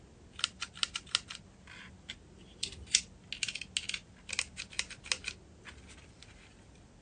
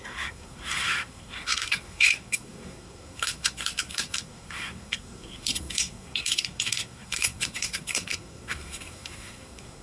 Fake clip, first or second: second